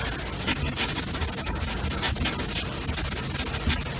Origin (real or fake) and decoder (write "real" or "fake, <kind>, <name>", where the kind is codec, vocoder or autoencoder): real